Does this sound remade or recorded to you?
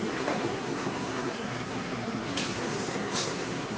remade